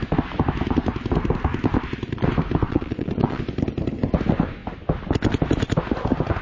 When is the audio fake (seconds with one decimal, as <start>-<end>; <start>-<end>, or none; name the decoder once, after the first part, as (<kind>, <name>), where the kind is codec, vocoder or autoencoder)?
2.6-3.4 (vocoder, WaveNeXt)